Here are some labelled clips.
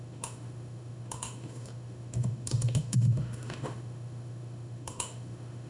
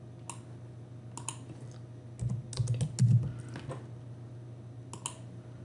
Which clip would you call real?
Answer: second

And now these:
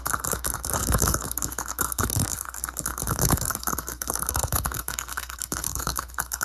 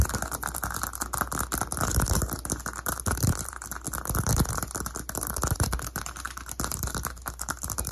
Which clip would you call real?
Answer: second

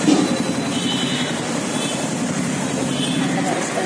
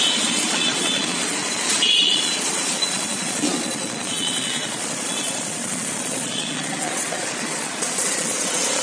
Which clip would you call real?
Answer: first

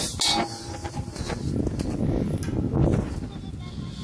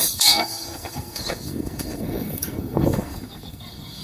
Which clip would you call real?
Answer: first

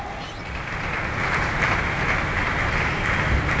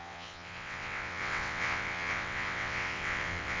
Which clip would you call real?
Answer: first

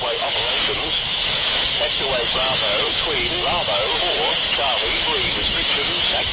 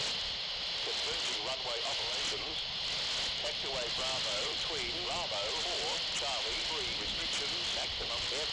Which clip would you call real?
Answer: second